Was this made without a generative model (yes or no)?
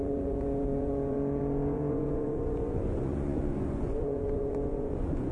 no